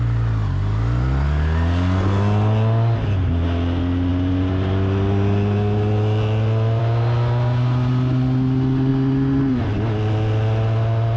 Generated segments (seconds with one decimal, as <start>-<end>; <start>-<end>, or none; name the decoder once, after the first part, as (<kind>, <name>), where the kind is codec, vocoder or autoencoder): none